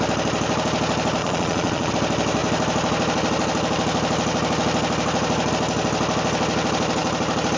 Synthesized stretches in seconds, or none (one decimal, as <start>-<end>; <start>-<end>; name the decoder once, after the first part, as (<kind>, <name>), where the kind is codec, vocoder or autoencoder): 1.2-1.9 (vocoder, Vocos)